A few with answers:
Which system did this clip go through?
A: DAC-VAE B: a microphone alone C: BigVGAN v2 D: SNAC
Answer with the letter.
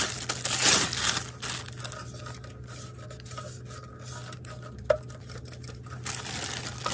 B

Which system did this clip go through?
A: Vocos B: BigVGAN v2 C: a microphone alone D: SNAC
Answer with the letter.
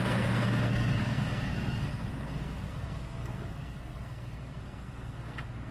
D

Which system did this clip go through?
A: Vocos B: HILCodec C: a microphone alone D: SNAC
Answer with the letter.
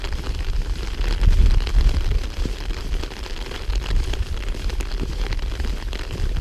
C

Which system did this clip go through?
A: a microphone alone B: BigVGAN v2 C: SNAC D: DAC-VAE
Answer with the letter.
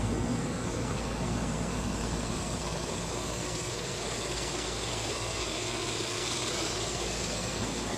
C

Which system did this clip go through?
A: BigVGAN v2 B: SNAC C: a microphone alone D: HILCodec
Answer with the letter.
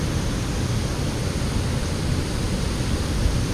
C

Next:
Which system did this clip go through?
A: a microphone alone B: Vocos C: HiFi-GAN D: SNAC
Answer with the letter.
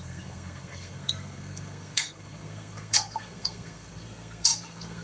D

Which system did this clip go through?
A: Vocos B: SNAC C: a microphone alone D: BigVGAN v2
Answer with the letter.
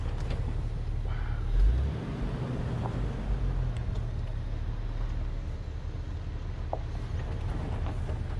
C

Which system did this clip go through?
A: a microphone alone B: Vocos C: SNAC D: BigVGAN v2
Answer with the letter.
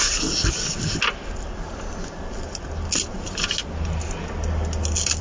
A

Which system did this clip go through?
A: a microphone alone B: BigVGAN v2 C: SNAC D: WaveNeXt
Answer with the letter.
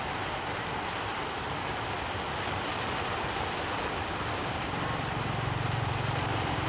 A